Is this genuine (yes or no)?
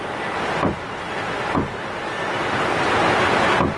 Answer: yes